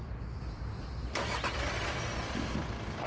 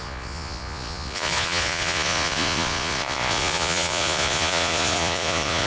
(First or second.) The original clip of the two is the first